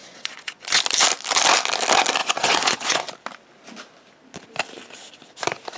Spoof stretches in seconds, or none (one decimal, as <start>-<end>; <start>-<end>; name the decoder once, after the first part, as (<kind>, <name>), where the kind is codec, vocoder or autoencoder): 0.0-0.8 (vocoder, Vocos); 2.2-3.1